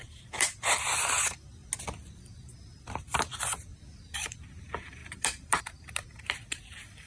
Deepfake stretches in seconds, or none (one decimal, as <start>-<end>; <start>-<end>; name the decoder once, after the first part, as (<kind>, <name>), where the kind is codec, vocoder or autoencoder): 0.0-1.6 (vocoder, BigVGAN v2); 2.3-3.7; 4.6-7.1